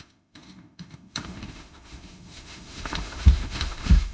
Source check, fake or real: fake